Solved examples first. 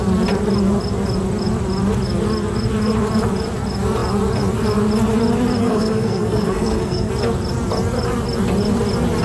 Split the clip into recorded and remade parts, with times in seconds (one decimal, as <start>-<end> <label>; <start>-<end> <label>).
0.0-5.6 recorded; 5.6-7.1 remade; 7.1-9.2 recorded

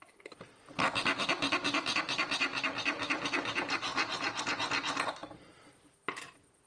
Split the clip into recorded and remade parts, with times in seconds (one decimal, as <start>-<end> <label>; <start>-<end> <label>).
0.0-6.7 recorded

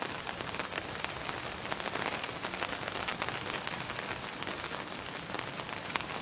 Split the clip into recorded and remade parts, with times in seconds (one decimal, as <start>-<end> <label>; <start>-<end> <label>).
0.0-6.2 recorded

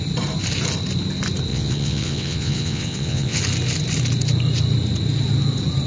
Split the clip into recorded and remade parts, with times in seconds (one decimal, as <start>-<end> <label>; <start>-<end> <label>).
0.0-1.5 recorded; 1.5-3.4 remade; 3.4-5.9 recorded

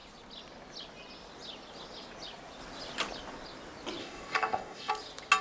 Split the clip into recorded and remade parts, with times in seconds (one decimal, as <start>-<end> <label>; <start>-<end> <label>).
0.0-4.0 recorded; 4.0-4.9 remade; 4.9-5.4 recorded